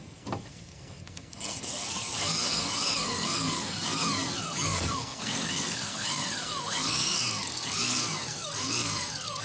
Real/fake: fake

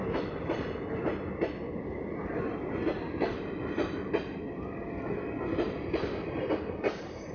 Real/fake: real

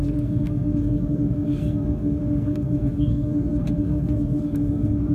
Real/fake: fake